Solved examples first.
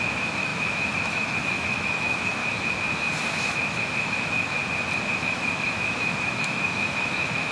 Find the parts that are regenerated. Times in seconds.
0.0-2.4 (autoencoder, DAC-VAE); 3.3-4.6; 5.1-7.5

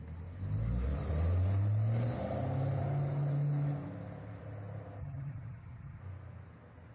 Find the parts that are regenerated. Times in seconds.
5.0-6.0 (vocoder, HiFi-GAN)

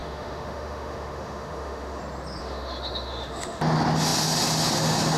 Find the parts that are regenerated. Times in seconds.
0.0-2.0 (autoencoder, DAC-VAE); 2.4-3.6

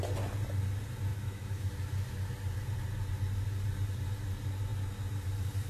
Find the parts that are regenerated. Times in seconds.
1.1-1.7 (autoencoder, DAC-VAE)

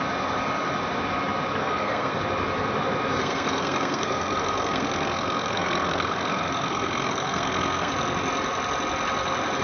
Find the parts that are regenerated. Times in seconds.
1.6-2.2 (codec, SNAC); 3.2-7.9

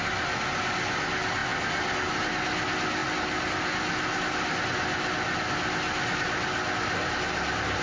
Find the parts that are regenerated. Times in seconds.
none

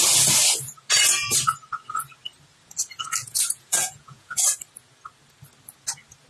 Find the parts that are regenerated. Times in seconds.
3.2-4.4 (vocoder, Vocos)

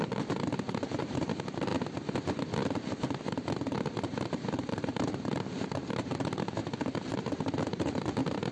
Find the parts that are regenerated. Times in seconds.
0.0-1.7 (vocoder, BigVGAN v2); 3.2-8.5